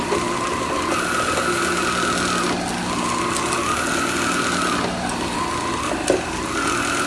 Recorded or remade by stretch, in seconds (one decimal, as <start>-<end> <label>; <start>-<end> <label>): 0.0-7.1 recorded